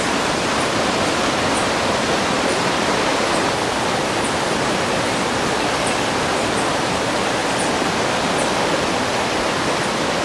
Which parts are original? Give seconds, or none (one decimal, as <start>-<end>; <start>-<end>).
0.0-10.2